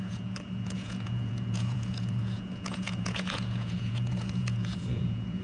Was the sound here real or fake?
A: fake